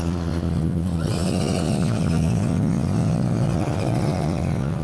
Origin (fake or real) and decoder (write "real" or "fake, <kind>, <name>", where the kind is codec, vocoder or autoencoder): fake, vocoder, Vocos